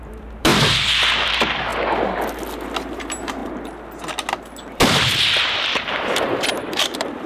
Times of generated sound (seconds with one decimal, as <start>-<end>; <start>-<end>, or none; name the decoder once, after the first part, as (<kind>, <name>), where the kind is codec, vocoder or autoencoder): 0.0-0.5 (vocoder, BigVGAN v2); 1.2-1.7; 2.9-3.4; 5.9-7.3